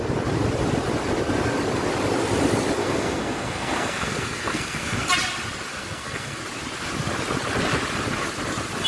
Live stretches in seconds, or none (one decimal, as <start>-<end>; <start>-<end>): 0.0-2.8; 5.1-5.7; 6.4-8.9